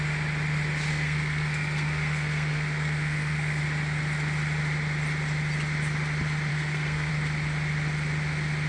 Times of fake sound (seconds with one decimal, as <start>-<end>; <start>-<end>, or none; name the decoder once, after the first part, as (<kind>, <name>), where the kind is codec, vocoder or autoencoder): 0.9-3.6 (codec, SNAC); 6.5-7.1